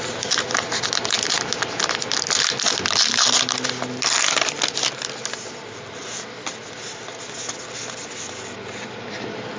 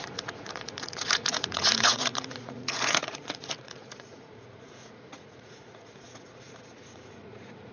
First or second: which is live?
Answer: first